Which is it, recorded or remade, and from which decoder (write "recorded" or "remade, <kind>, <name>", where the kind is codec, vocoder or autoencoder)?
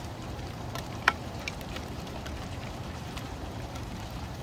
remade, vocoder, BigVGAN v2